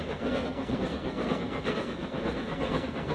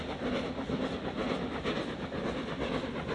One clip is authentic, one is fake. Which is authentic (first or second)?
second